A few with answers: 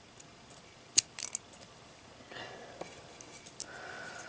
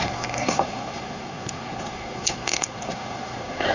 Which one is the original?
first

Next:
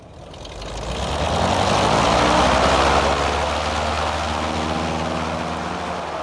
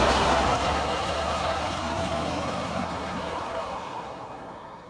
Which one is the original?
first